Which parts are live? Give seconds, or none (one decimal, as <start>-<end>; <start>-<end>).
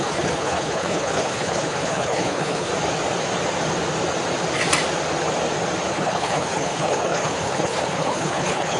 2.7-5.9